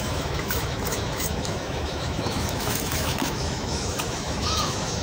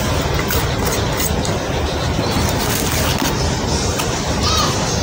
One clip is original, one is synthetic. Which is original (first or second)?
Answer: second